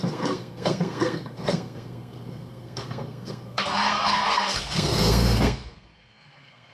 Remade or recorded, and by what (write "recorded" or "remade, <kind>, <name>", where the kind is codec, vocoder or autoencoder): remade, codec, SNAC